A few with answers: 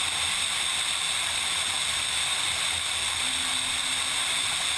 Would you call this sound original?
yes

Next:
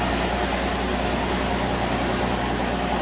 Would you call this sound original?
yes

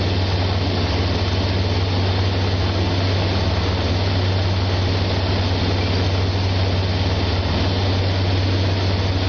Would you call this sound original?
yes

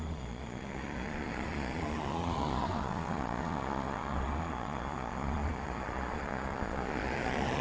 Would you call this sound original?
no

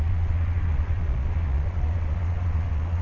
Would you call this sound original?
no